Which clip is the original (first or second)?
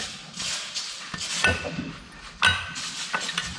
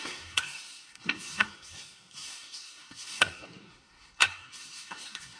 first